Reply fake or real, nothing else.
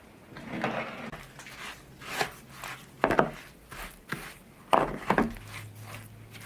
real